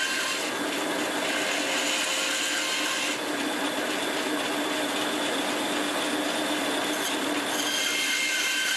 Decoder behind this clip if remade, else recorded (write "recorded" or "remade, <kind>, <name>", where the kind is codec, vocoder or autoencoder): recorded